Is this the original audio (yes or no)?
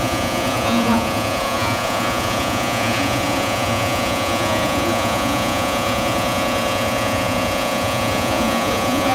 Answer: no